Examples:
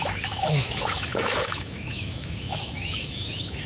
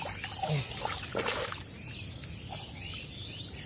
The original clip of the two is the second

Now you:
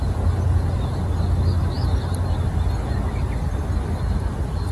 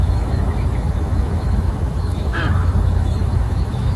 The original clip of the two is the first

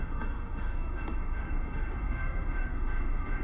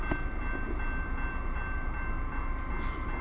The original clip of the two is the second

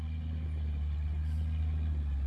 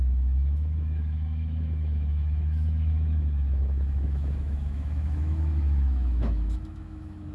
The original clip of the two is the first